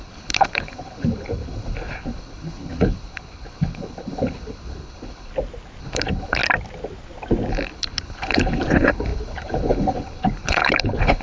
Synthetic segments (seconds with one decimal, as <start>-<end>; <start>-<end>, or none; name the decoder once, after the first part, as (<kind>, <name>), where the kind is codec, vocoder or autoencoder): 0.0-5.3 (codec, HILCodec); 5.8-6.4; 7.5-11.2